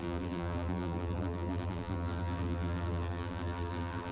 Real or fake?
fake